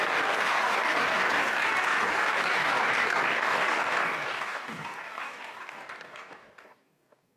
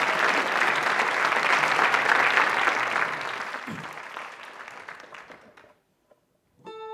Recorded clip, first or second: second